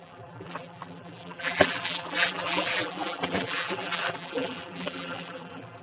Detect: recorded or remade remade